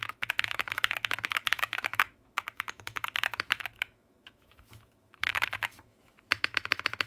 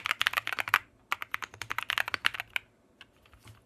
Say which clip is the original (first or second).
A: second